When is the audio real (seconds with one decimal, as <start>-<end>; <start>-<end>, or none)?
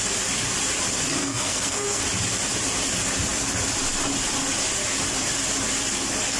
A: 0.0-1.2; 2.0-6.4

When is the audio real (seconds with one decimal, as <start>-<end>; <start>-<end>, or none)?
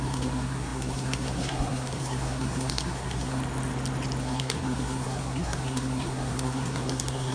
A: 3.4-4.2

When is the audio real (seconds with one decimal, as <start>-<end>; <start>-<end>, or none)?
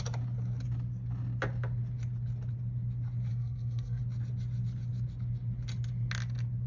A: 0.0-3.3; 4.0-6.7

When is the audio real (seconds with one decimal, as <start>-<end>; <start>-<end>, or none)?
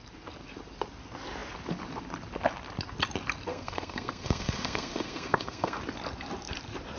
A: 0.0-3.5; 5.8-7.0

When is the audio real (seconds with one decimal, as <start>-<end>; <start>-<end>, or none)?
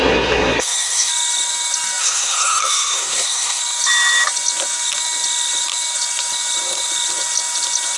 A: 1.1-2.0; 3.6-8.0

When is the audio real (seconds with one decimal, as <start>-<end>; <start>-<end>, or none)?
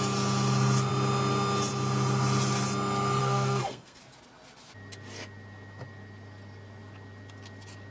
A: 0.0-3.2; 4.0-7.9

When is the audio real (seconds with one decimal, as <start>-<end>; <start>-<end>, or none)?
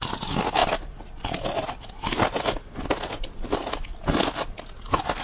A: 0.0-5.2